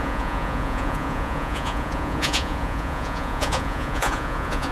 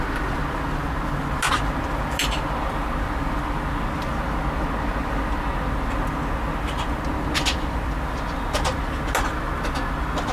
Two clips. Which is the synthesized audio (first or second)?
first